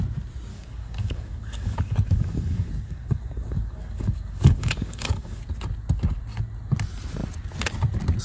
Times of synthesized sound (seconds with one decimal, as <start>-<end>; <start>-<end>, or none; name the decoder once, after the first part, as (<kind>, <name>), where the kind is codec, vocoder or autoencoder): 0.5-5.4 (codec, DAC)